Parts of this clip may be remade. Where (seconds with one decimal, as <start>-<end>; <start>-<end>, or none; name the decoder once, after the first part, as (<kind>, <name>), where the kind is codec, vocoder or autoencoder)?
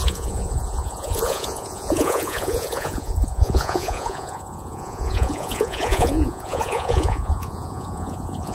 0.0-8.5 (vocoder, Vocos)